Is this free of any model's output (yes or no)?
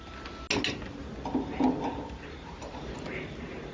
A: yes